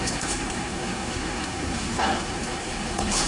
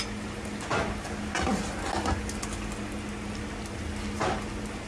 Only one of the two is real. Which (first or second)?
second